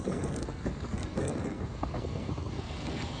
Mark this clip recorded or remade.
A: remade